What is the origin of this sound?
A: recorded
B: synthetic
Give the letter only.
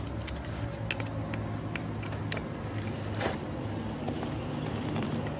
A